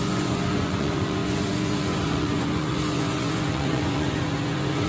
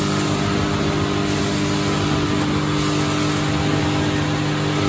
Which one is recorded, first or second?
second